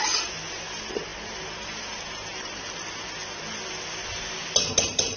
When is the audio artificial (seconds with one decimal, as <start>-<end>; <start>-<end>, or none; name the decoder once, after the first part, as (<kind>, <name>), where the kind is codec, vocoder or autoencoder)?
none